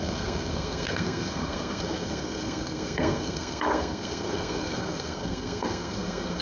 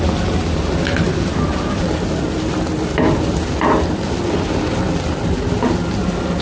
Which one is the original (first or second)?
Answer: second